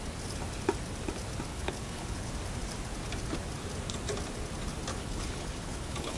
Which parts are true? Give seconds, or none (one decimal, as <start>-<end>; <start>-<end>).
0.0-1.5; 2.3-4.9